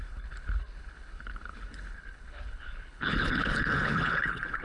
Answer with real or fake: fake